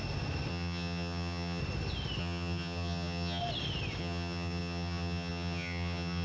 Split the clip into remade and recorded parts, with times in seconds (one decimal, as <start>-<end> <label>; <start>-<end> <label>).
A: 0.0-0.5 recorded; 0.5-1.6 remade; 1.6-2.2 recorded; 2.2-3.4 remade; 3.4-4.0 recorded; 4.0-6.2 remade